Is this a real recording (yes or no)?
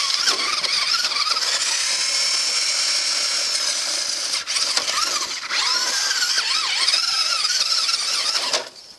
yes